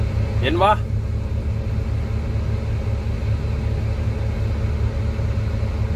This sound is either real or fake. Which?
real